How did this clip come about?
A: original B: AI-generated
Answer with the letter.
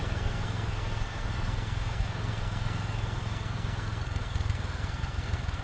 B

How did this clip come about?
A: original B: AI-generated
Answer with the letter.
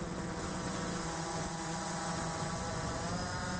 B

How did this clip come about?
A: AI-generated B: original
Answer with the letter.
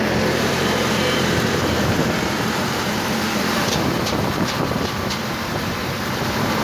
A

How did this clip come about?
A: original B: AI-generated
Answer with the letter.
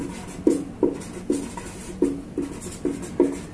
A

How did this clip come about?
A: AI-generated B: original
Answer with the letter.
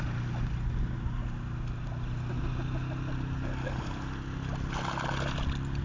B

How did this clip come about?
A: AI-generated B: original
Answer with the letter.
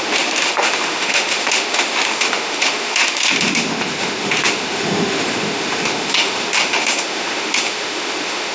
A